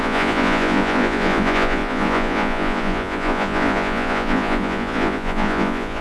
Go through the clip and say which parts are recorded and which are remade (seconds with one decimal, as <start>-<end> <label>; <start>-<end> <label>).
0.0-6.0 remade